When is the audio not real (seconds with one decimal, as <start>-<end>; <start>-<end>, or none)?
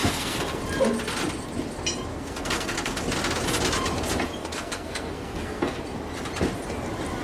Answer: 0.0-0.6; 2.1-3.0; 4.4-5.8